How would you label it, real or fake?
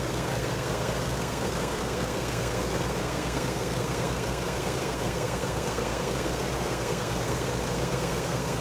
fake